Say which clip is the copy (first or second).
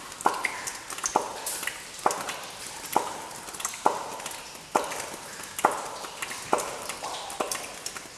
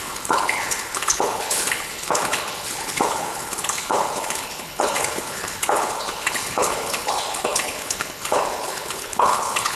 second